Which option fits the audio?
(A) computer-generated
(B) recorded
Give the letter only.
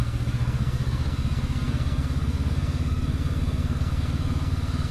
A